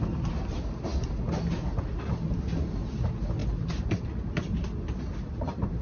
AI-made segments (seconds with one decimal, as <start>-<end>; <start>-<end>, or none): none